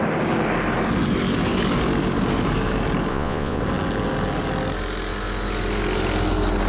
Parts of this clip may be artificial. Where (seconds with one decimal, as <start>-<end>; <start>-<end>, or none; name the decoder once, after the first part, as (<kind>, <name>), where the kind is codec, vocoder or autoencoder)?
3.1-3.6 (vocoder, Vocos)